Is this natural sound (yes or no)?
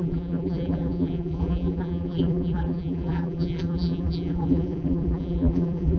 no